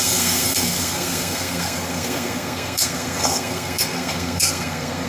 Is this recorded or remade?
remade